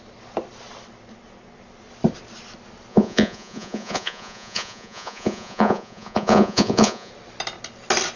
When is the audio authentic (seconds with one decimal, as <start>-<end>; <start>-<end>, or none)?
0.0-2.9; 7.1-8.2